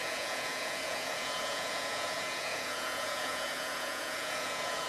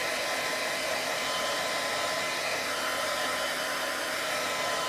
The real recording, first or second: second